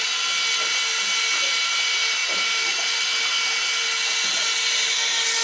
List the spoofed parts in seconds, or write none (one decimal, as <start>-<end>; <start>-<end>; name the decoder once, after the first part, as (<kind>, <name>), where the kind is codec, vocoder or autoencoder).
none